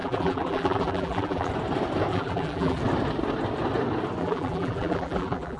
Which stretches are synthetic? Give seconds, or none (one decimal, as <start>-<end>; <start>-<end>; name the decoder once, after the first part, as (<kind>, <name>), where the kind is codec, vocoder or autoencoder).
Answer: 0.0-1.5 (vocoder, BigVGAN v2); 2.1-2.8; 4.2-5.6